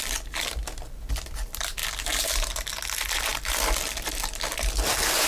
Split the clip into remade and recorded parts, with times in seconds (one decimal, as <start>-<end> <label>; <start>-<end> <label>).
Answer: 0.0-1.8 remade; 1.8-2.5 recorded; 2.5-5.3 remade